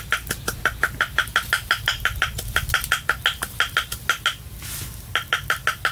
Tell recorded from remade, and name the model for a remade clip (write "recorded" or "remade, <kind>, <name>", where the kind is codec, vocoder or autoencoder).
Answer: recorded